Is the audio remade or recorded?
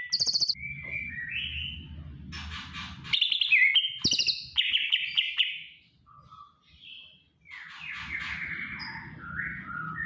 recorded